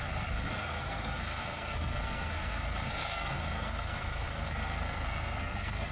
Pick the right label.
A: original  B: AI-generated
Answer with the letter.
B